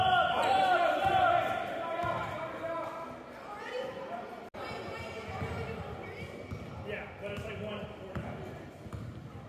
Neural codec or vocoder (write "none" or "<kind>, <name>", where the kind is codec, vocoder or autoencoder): none